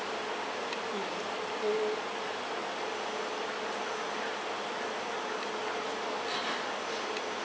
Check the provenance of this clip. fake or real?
real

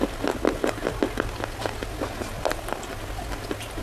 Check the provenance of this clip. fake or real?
real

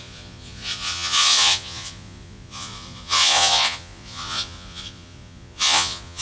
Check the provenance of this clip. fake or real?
fake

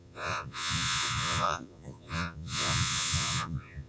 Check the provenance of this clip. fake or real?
fake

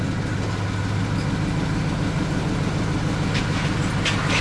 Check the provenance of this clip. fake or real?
real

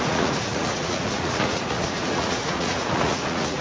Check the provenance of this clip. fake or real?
fake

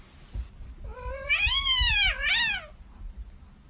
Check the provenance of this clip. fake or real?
real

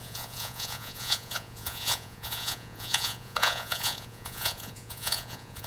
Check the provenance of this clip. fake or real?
fake